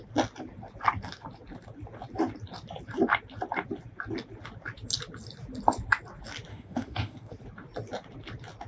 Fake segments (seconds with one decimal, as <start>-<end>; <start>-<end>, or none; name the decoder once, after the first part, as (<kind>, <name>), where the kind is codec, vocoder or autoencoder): 6.5-7.3 (autoencoder, DAC-VAE)

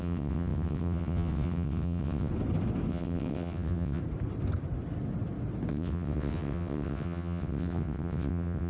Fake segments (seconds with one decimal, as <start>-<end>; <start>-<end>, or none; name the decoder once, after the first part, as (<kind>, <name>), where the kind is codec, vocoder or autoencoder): 0.0-2.3 (vocoder, WaveNeXt); 2.9-4.0; 5.7-8.7